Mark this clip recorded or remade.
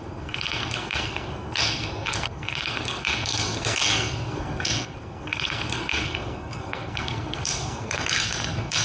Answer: remade